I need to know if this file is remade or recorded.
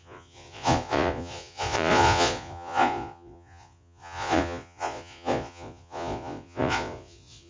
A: remade